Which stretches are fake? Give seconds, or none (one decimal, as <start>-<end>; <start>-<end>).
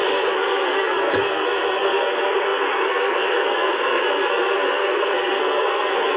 0.0-6.2